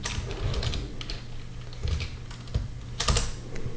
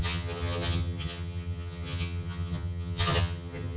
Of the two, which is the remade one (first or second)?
second